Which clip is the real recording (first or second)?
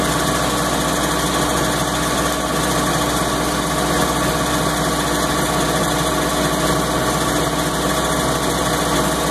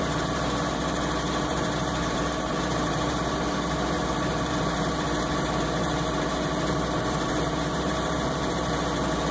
first